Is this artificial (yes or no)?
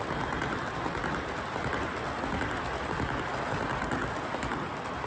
no